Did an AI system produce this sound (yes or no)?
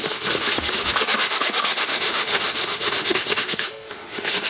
yes